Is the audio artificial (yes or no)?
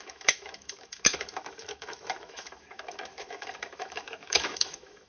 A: yes